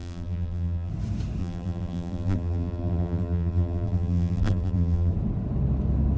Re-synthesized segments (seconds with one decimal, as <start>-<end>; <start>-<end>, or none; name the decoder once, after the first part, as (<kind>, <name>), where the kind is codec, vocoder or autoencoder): 0.0-0.9 (vocoder, BigVGAN v2); 1.4-5.1